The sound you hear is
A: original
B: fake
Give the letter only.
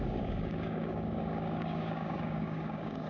B